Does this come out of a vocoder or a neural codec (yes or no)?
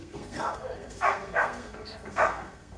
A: yes